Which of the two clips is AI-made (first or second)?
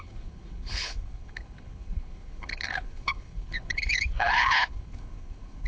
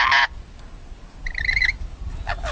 first